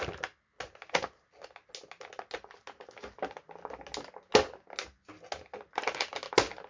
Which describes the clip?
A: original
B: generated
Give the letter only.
A